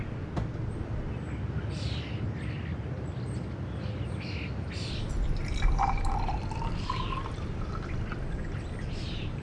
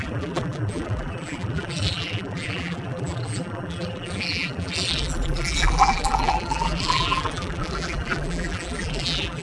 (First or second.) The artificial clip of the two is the second